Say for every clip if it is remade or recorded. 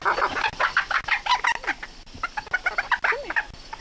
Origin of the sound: recorded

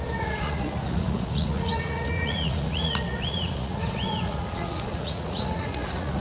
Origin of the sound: remade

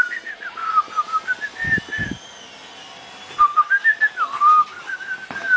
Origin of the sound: recorded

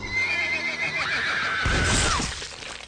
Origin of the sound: recorded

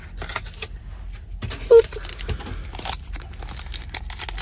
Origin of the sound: recorded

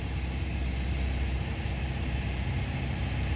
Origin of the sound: recorded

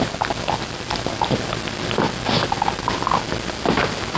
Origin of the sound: recorded